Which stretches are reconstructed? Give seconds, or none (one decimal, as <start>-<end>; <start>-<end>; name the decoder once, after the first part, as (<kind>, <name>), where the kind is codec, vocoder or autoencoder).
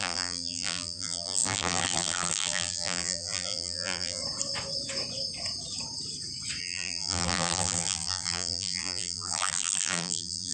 0.0-4.2 (vocoder, BigVGAN v2); 6.6-10.5